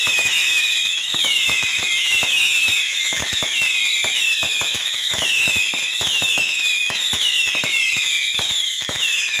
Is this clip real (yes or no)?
no